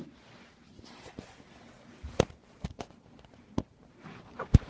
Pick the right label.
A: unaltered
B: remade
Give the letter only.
A